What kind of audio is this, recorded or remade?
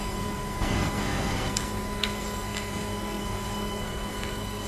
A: remade